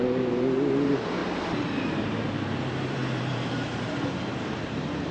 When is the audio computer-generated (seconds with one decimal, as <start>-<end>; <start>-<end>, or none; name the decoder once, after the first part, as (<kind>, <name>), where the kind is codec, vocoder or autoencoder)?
0.0-1.2 (vocoder, BigVGAN v2); 2.0-5.1